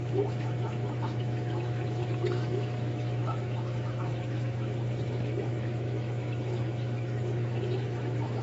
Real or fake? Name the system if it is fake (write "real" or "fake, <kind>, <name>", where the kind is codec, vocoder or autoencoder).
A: fake, autoencoder, DAC-VAE